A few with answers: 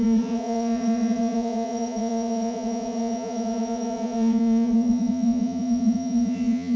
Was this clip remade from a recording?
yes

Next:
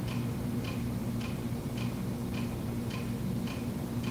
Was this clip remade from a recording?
no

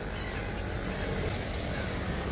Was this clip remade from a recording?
no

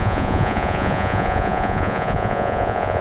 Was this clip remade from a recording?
yes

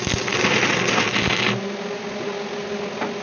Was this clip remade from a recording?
no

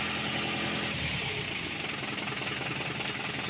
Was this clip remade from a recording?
no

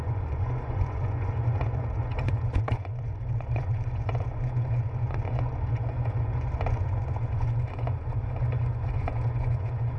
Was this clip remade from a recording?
yes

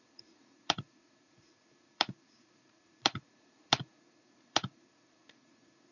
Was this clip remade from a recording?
yes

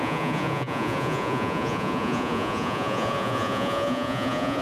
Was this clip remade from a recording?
yes